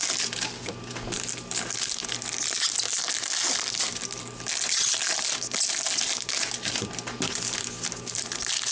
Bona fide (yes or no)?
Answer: yes